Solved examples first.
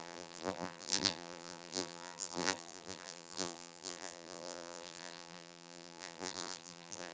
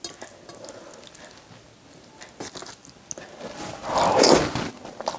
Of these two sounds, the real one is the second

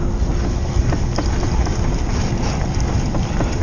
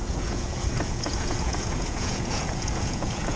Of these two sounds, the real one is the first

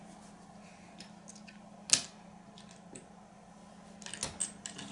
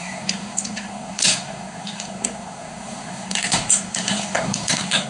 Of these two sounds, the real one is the first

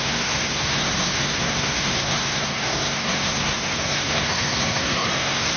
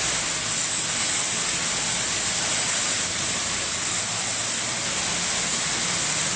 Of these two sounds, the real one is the second